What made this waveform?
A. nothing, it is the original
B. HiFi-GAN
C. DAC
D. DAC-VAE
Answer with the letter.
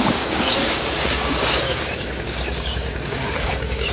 C